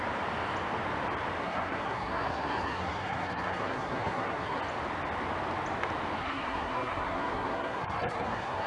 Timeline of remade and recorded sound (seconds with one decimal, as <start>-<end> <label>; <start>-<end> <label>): 0.0-1.4 recorded; 1.4-4.6 remade; 4.6-6.2 recorded; 6.2-8.7 remade